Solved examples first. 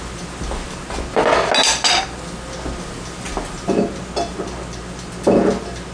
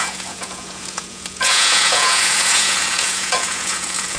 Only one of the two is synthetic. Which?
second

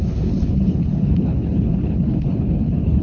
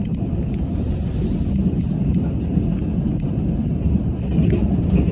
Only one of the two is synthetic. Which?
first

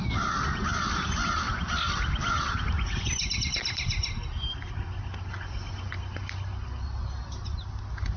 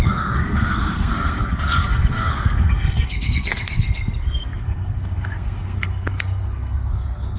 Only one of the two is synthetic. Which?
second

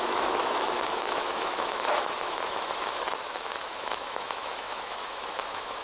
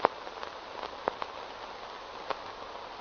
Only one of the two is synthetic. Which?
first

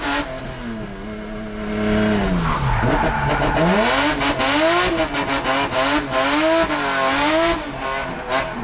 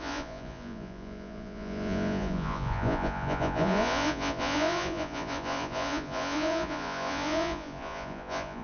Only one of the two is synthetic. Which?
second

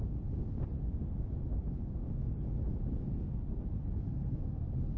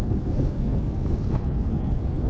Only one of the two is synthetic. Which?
second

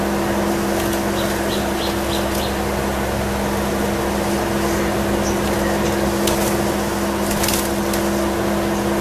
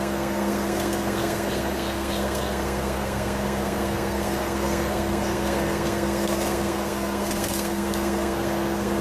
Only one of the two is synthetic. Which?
second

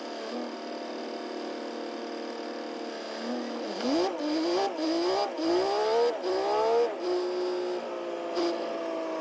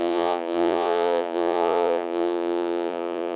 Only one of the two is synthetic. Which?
second